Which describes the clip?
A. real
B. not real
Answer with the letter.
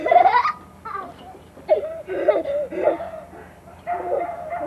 A